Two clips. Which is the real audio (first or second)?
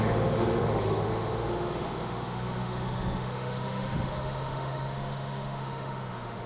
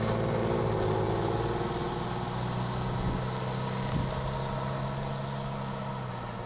second